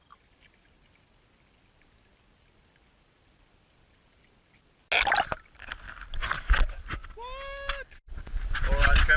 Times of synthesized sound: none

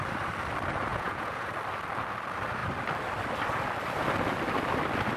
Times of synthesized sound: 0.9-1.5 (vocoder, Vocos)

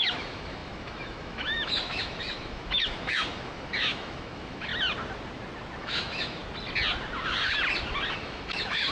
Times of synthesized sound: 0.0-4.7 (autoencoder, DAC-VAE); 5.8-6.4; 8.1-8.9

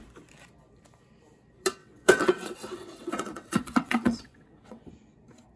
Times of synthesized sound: 1.8-4.9 (vocoder, WaveNeXt)

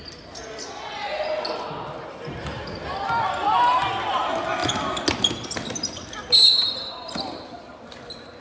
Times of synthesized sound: none

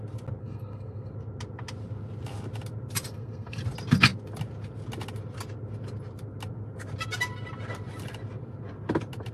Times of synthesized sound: 0.4-1.1 (codec, SNAC); 3.1-3.6

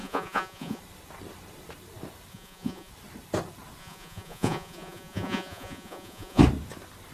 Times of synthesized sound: 0.0-0.8 (vocoder, Vocos); 2.3-2.9; 3.8-6.4